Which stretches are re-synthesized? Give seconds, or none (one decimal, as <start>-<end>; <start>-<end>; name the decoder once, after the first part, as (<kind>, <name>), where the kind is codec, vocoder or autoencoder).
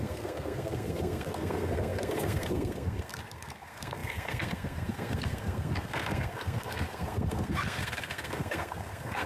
0.0-9.3 (codec, SNAC)